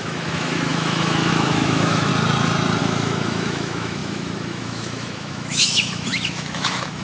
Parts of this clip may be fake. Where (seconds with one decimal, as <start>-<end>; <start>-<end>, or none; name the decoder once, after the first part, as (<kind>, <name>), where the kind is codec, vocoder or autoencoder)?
0.0-2.1 (autoencoder, DAC-VAE); 2.8-7.0